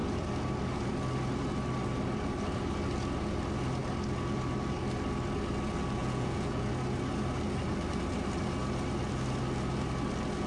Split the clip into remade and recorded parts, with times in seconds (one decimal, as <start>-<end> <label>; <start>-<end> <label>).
0.0-6.0 recorded; 6.0-6.7 remade; 6.7-10.5 recorded